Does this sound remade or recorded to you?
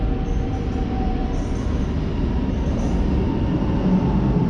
recorded